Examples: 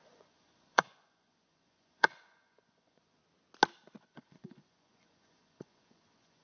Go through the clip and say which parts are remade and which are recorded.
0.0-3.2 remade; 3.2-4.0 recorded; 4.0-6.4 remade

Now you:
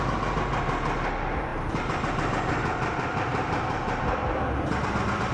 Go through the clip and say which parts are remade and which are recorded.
0.0-1.5 recorded; 1.5-4.0 remade; 4.0-5.3 recorded

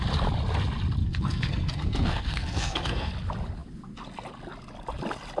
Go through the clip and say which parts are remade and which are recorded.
0.0-1.0 recorded; 1.0-3.1 remade; 3.1-5.4 recorded

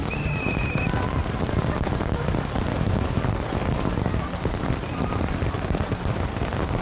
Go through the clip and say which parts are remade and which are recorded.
0.0-2.7 recorded; 2.7-3.2 remade; 3.2-6.8 recorded

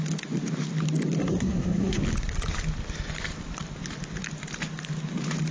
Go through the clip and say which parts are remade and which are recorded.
0.0-1.2 recorded; 1.2-2.0 remade; 2.0-5.5 recorded

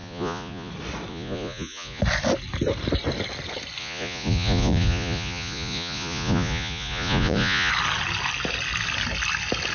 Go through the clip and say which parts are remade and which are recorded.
0.0-0.7 remade; 0.7-1.1 recorded; 1.1-2.0 remade; 2.0-3.8 recorded; 3.8-7.7 remade; 7.7-9.7 recorded